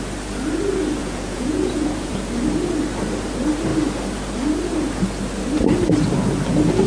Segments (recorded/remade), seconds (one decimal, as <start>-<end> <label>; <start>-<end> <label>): 0.0-1.0 recorded; 1.0-2.1 remade; 2.1-6.9 recorded